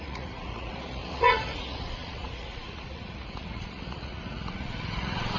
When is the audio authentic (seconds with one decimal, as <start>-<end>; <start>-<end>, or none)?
none